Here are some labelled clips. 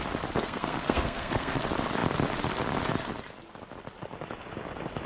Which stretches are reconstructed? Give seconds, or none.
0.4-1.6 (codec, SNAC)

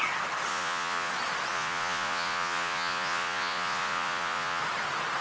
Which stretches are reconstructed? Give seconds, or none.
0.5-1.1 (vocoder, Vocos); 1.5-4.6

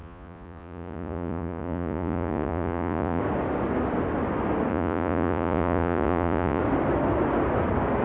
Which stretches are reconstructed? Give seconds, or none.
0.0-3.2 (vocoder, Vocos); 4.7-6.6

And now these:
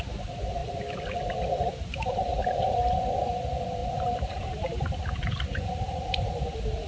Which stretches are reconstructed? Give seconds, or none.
3.8-6.2 (vocoder, BigVGAN v2)